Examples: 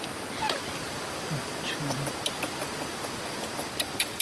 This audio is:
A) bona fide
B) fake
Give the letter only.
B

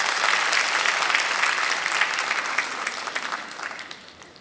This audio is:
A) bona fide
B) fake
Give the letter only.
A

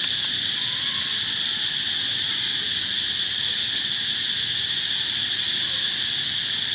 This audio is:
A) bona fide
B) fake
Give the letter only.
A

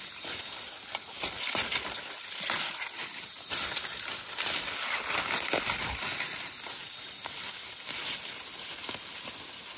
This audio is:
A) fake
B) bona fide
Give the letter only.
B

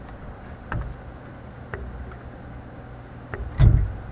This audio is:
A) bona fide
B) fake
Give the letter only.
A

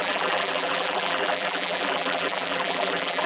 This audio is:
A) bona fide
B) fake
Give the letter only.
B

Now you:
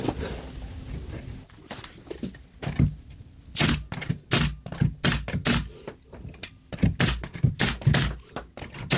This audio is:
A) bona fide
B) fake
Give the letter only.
A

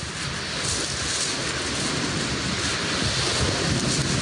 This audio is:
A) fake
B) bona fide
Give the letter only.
B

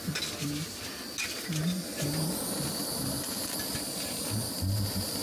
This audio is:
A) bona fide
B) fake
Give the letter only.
A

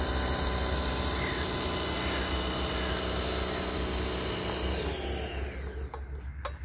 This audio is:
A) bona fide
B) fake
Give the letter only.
A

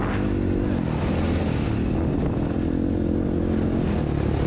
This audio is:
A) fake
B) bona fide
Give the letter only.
B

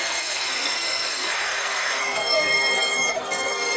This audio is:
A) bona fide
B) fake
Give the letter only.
B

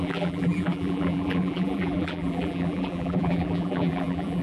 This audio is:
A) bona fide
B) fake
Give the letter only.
B